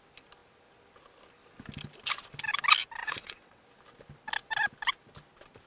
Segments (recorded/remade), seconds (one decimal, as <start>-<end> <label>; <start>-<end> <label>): 0.0-3.0 recorded; 3.0-3.6 remade; 3.6-5.7 recorded